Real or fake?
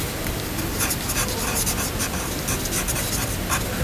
real